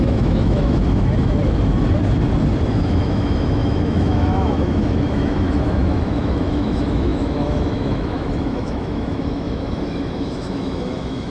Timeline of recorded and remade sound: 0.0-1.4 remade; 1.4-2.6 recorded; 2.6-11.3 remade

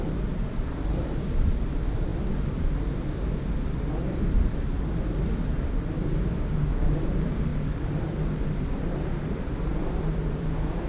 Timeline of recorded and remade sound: 0.0-10.9 remade

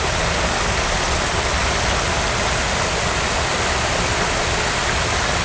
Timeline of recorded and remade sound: 0.0-5.4 recorded

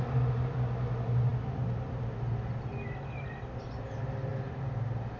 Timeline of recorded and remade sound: 0.0-5.2 recorded

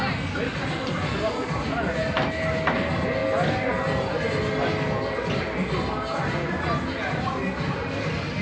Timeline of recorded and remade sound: 0.0-8.4 recorded